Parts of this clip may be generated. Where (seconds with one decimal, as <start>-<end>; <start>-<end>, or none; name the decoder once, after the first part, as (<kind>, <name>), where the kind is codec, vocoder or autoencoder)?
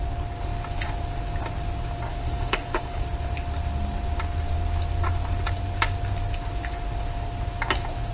2.1-3.0 (codec, DAC)